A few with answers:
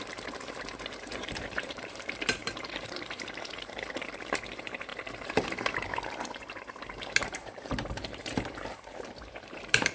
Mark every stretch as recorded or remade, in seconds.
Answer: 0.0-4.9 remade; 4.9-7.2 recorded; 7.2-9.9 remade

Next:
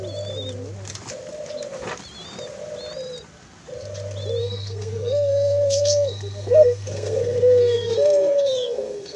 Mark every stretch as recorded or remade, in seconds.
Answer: 0.0-4.4 recorded; 4.4-9.2 remade

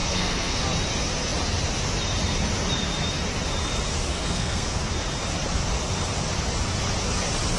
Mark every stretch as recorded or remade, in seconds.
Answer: 0.0-0.6 remade; 0.6-4.1 recorded; 4.1-4.8 remade; 4.8-7.6 recorded

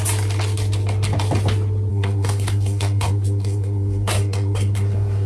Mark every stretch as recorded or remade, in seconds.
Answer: 0.0-1.9 recorded; 1.9-5.3 remade

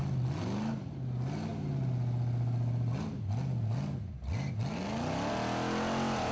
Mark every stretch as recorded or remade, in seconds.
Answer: 0.0-6.3 recorded

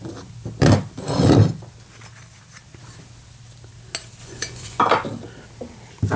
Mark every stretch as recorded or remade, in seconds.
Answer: 0.0-4.2 recorded; 4.2-4.8 remade; 4.8-6.2 recorded

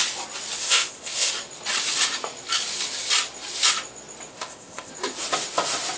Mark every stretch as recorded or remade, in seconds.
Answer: 0.0-0.6 recorded; 0.6-1.3 remade; 1.3-4.3 recorded; 4.3-4.9 remade; 4.9-6.0 recorded

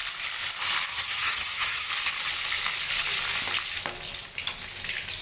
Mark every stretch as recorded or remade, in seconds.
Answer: 0.0-0.9 recorded; 0.9-1.9 remade; 1.9-5.2 recorded